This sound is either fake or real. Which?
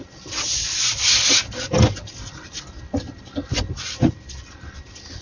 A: real